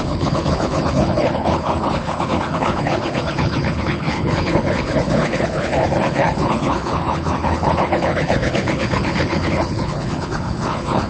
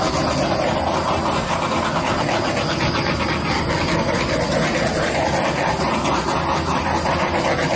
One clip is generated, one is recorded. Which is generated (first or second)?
first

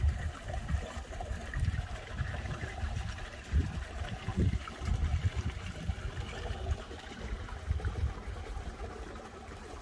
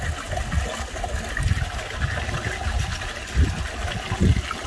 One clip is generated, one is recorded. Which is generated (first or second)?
first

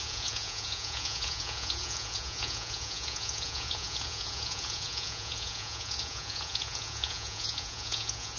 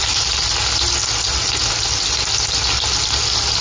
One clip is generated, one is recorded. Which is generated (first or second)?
first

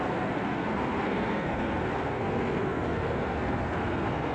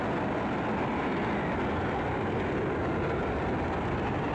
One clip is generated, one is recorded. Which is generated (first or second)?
first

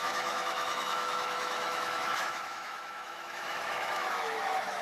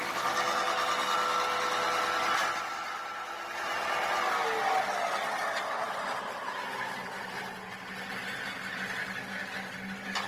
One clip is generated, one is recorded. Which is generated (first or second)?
first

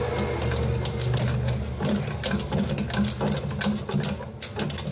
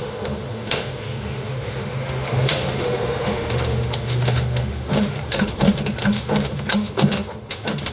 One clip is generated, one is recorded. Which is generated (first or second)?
second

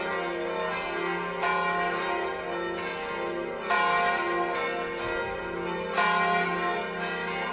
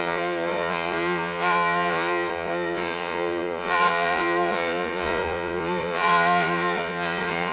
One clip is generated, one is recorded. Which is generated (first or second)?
second